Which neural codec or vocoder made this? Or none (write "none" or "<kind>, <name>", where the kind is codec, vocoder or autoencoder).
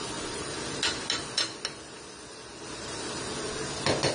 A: none